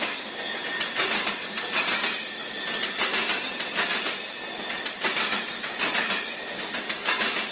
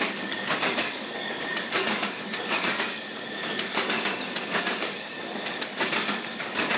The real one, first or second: first